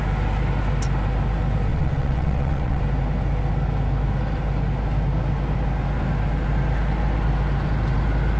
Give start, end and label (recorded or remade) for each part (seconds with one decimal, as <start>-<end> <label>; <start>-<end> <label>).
0.0-1.7 recorded; 1.7-2.8 remade; 2.8-8.4 recorded

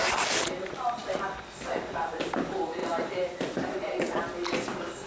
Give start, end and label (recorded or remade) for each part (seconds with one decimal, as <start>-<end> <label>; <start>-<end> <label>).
0.0-2.8 recorded; 2.8-4.2 remade; 4.2-5.1 recorded

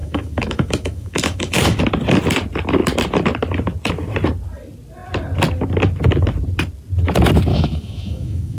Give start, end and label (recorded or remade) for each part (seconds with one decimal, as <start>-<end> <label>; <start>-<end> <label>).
0.0-1.8 remade; 1.8-7.5 recorded; 7.5-8.6 remade

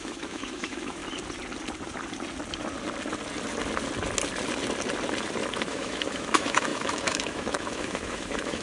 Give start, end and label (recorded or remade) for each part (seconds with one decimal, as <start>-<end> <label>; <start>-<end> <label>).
0.0-1.0 remade; 1.0-5.6 recorded; 5.6-8.6 remade

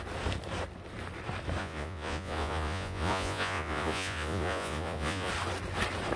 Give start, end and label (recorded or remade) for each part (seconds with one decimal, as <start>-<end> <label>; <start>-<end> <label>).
0.0-1.6 recorded; 1.6-5.3 remade; 5.3-6.2 recorded

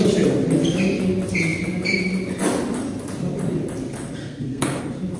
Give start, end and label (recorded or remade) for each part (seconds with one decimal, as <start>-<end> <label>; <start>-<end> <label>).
0.0-4.2 recorded; 4.2-4.8 remade; 4.8-5.2 recorded

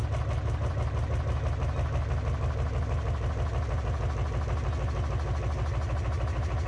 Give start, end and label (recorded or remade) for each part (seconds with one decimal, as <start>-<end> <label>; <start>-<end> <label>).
0.0-6.7 recorded